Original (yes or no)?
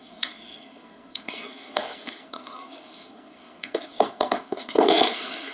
no